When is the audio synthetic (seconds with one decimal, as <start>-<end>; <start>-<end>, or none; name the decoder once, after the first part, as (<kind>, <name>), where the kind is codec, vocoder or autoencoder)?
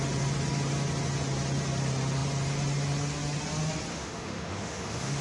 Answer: 3.9-5.2 (autoencoder, DAC-VAE)